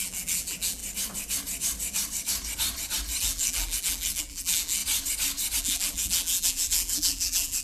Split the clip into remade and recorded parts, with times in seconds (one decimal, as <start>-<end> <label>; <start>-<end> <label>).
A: 0.0-0.8 remade; 0.8-3.2 recorded; 3.2-4.8 remade; 4.8-5.6 recorded; 5.6-7.6 remade